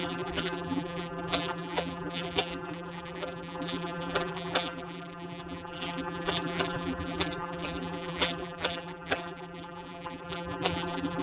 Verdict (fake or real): fake